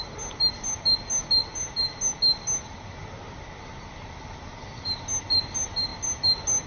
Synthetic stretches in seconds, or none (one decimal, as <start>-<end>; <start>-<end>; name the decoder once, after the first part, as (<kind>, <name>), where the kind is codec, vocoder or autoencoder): none